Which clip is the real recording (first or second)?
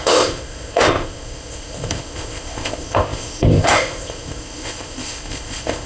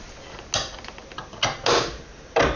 second